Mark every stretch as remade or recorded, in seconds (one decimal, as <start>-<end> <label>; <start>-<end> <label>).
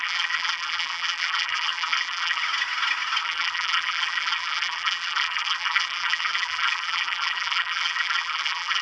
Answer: 0.0-2.4 remade; 2.4-3.2 recorded; 3.2-8.8 remade